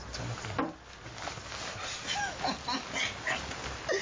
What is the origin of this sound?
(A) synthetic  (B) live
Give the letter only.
B